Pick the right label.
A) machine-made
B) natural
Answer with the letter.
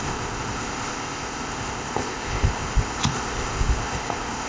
A